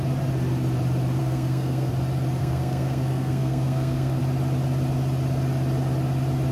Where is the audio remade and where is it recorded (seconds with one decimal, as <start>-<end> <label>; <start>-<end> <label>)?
0.0-1.2 recorded; 1.2-1.9 remade; 1.9-2.4 recorded; 2.4-4.2 remade; 4.2-6.5 recorded